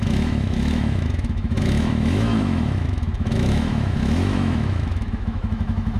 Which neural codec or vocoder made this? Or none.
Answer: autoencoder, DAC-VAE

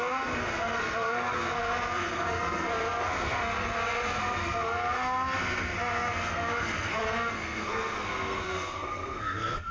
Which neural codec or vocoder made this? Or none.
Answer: codec, SNAC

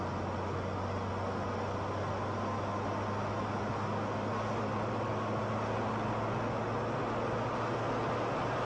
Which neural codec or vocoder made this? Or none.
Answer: none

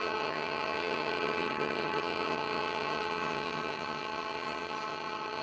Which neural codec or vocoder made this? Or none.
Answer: vocoder, HiFi-GAN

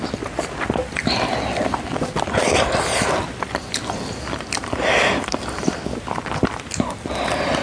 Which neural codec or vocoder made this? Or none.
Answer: none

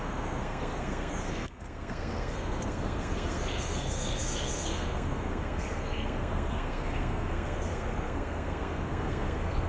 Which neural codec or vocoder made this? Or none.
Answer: codec, SNAC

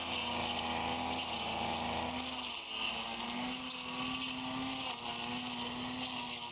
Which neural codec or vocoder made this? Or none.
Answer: none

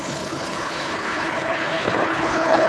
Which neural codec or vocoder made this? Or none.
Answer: codec, HILCodec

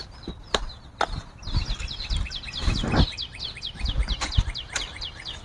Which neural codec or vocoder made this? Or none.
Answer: none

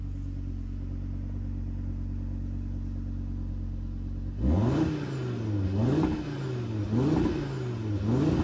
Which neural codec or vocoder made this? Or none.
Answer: none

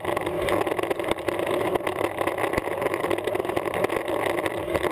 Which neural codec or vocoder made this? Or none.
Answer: none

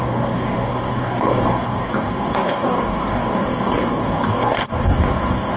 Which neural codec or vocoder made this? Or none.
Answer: codec, DAC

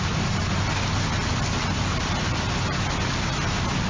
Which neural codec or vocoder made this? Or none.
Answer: none